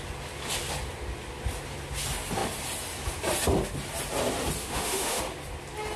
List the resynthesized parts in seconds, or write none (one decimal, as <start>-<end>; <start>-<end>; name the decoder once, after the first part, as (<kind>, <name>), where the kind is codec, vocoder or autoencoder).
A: 4.6-5.2 (autoencoder, DAC-VAE)